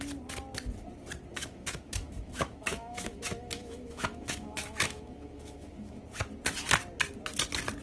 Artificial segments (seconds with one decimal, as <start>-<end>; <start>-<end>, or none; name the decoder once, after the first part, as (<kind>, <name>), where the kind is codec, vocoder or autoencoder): 1.3-6.0 (autoencoder, DAC-VAE)